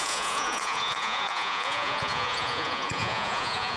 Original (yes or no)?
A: no